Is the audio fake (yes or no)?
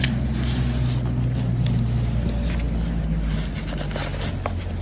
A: no